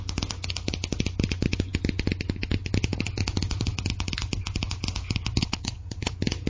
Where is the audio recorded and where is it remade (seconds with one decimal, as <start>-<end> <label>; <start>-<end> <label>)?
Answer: 0.0-5.4 recorded; 5.4-6.1 remade; 6.1-6.5 recorded